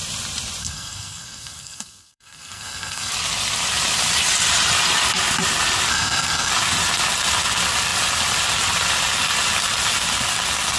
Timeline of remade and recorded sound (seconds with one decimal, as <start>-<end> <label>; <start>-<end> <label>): 0.0-0.6 recorded; 0.6-3.1 remade; 3.1-5.9 recorded; 5.9-6.5 remade; 6.5-10.8 recorded